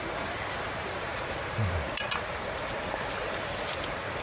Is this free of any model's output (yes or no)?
no